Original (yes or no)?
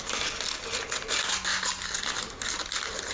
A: yes